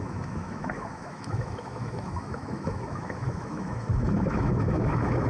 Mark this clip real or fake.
fake